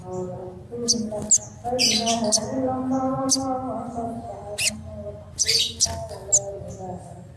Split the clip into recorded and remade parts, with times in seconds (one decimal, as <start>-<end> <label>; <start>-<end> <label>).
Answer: 0.0-7.4 recorded